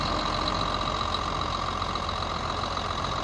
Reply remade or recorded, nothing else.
recorded